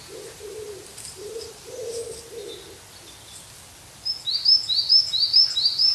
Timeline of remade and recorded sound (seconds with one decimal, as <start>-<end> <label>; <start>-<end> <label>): 0.0-2.0 remade; 2.0-5.5 recorded; 5.5-5.9 remade